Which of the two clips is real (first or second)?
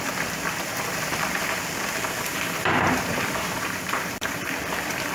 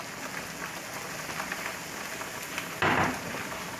second